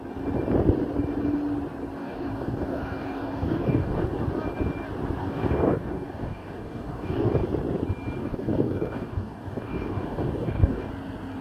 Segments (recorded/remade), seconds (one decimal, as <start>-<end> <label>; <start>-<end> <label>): 0.0-2.0 recorded; 2.0-4.2 remade; 4.2-5.2 recorded; 5.2-7.3 remade; 7.3-8.2 recorded; 8.2-10.9 remade; 10.9-11.4 recorded